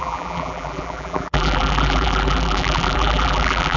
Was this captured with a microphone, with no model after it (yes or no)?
no